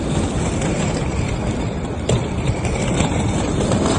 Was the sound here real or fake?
fake